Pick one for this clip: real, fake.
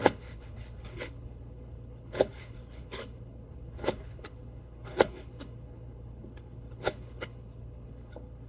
fake